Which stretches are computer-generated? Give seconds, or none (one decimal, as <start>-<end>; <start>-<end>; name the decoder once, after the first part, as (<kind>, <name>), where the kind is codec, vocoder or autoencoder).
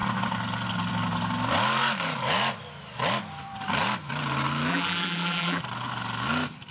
4.7-5.6 (vocoder, BigVGAN v2)